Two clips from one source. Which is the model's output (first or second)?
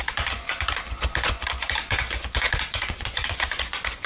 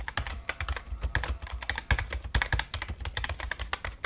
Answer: first